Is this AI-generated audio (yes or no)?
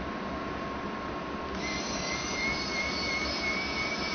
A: no